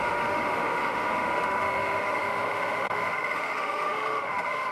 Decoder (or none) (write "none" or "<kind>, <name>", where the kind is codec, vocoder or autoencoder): autoencoder, DAC-VAE